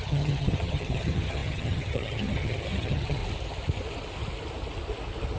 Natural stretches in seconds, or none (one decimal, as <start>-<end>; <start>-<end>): 3.2-5.4